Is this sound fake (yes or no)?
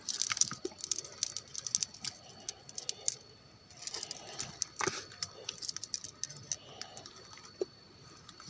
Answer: no